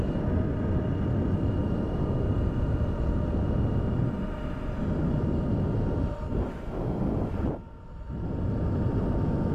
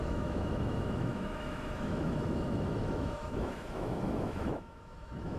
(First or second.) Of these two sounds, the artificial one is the second